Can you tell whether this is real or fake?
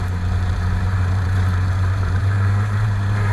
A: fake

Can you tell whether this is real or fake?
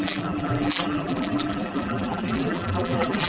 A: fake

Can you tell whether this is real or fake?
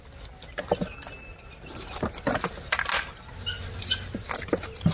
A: real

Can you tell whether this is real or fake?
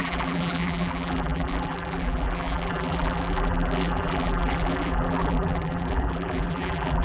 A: fake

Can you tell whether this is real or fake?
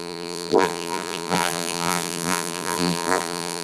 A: fake